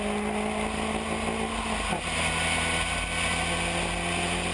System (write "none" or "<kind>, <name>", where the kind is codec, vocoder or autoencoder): none